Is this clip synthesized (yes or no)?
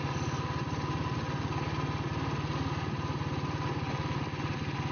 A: no